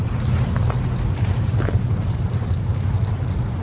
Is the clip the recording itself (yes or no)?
yes